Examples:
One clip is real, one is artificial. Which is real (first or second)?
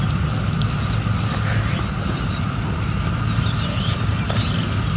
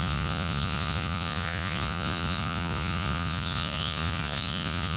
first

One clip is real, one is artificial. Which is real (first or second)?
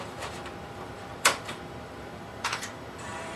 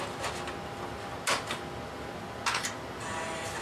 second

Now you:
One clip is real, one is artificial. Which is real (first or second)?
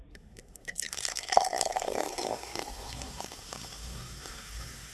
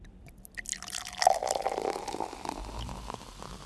second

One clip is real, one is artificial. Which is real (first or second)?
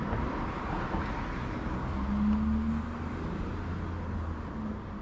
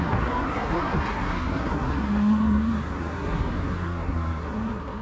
first